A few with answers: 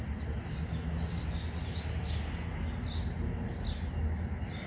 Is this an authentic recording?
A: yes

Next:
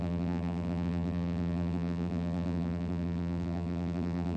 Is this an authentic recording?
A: no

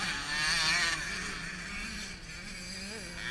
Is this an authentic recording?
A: yes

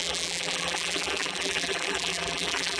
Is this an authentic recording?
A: no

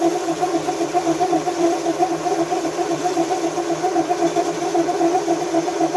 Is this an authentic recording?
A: no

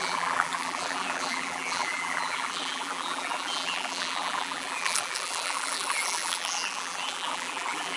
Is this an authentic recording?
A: no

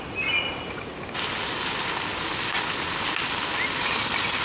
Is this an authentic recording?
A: yes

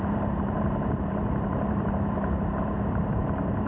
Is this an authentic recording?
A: no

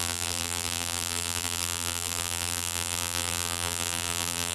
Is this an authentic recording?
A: no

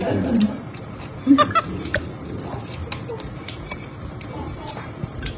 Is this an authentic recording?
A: no